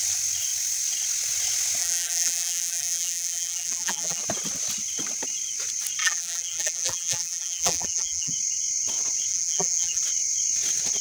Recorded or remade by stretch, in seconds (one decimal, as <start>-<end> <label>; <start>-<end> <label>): 0.0-1.8 recorded; 1.8-4.2 remade; 4.2-6.0 recorded; 6.0-8.3 remade; 8.3-9.3 recorded; 9.3-10.0 remade; 10.0-11.0 recorded